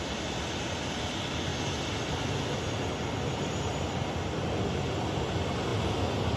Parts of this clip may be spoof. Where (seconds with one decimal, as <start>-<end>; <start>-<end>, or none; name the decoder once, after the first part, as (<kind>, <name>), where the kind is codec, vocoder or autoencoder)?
none